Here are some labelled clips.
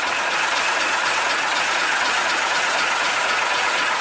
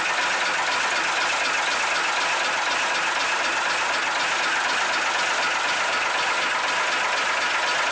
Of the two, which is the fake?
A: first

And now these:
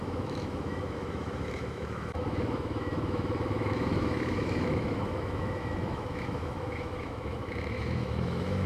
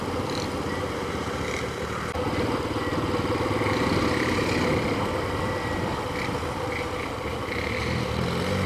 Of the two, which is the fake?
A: first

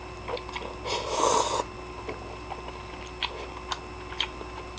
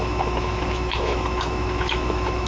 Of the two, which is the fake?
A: second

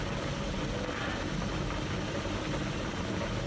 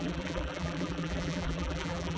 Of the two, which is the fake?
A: second